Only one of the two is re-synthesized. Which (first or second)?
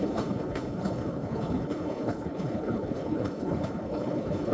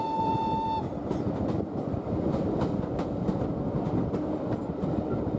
first